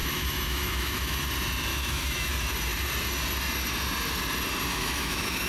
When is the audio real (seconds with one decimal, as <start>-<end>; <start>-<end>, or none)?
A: 1.2-1.7; 2.3-4.7